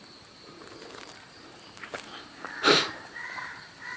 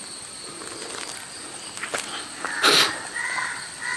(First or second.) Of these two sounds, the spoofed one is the first